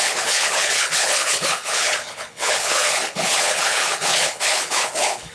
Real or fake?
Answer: fake